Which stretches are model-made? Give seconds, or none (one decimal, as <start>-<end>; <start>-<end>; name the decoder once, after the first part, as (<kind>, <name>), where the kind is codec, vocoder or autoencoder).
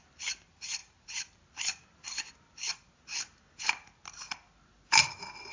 none